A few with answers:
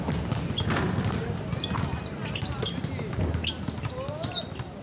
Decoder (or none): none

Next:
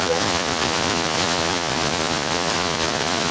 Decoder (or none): vocoder, Vocos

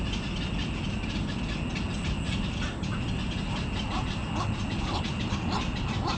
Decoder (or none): none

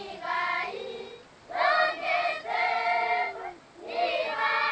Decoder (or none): none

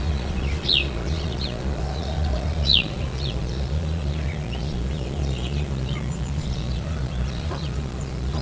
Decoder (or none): vocoder, Vocos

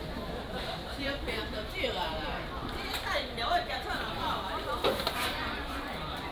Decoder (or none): vocoder, BigVGAN v2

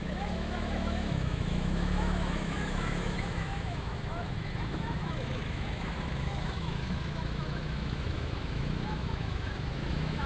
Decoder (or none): autoencoder, DAC-VAE